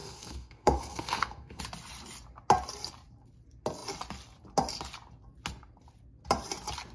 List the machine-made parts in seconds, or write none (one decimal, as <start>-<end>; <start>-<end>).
0.0-1.6

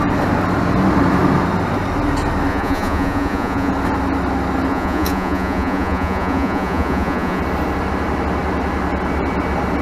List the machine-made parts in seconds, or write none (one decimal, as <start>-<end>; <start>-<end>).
2.5-3.7; 4.7-7.4